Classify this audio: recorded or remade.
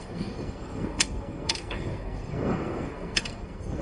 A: remade